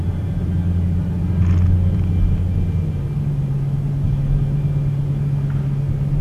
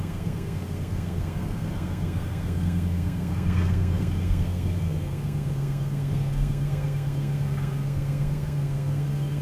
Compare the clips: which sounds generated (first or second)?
second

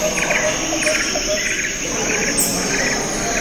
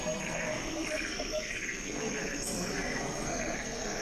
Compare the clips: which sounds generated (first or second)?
second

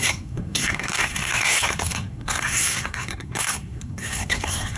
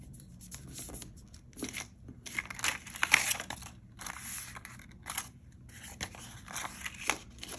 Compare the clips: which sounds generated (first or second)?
first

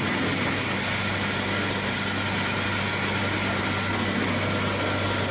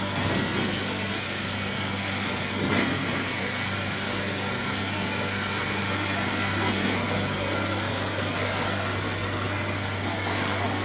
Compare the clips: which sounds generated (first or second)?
second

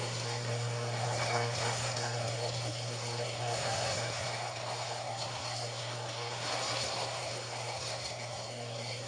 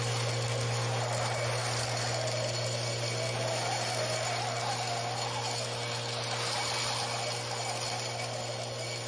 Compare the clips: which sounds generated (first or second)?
first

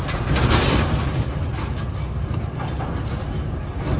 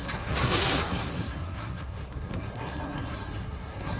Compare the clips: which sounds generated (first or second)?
second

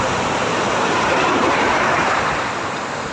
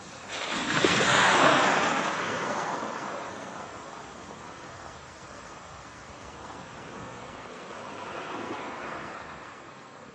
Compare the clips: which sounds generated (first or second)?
second